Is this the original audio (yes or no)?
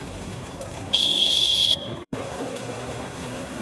no